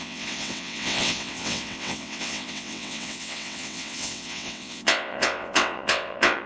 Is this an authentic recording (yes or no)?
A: no